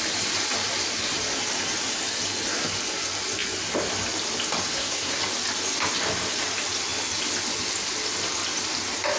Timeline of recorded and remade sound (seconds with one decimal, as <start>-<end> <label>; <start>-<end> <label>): 0.0-4.7 recorded; 4.7-5.2 remade; 5.2-9.2 recorded